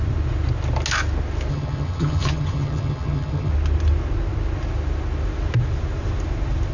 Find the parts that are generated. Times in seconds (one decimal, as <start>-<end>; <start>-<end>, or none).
1.5-3.5